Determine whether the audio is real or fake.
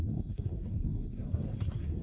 fake